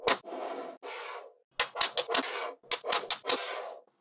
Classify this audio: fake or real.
real